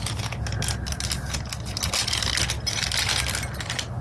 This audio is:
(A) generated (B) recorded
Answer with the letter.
B